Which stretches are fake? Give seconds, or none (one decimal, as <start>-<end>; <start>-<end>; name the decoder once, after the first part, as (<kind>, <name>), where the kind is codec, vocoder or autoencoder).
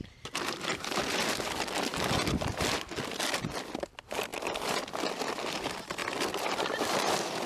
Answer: 0.0-1.9 (vocoder, BigVGAN v2); 3.9-4.3; 5.5-6.0; 6.6-7.5